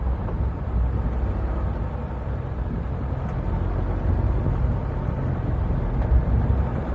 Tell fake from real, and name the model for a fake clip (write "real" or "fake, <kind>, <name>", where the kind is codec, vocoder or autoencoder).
real